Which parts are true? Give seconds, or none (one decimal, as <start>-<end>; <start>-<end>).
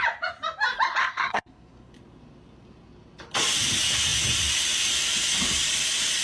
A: 0.0-1.0; 1.9-6.2